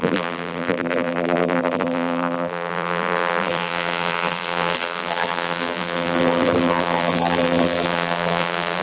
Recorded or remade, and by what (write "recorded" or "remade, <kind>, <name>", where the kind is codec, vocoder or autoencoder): remade, vocoder, BigVGAN v2